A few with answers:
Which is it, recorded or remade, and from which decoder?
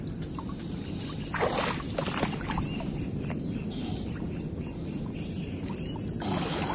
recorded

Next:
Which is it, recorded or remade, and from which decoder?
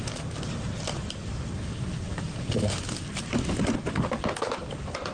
recorded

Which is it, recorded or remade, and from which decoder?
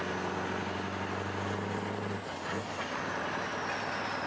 recorded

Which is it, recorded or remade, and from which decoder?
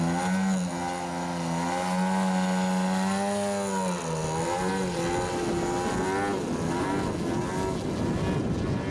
recorded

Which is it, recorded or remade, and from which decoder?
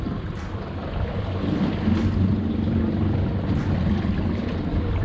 recorded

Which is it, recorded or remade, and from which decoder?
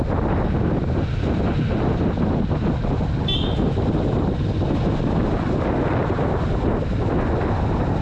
recorded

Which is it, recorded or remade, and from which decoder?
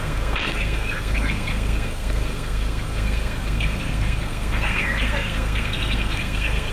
remade, codec, SNAC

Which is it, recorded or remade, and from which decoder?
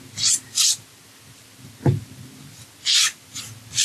recorded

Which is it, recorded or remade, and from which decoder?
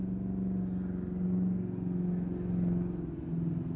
recorded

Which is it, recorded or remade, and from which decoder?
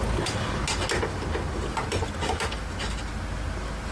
recorded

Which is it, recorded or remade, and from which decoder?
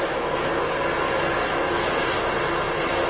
recorded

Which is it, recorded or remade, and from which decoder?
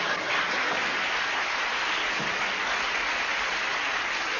recorded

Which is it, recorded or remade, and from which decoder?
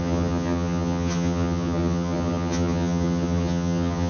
remade, vocoder, HiFi-GAN